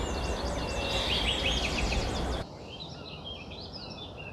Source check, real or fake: real